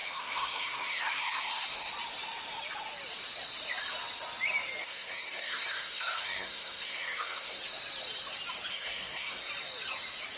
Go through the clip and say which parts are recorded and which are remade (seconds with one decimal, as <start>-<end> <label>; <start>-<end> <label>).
0.0-1.9 remade; 1.9-4.8 recorded; 4.8-7.6 remade; 7.6-8.7 recorded; 8.7-9.4 remade; 9.4-10.4 recorded